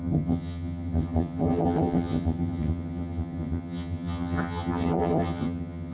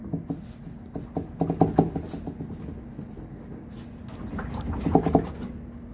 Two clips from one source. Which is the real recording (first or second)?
second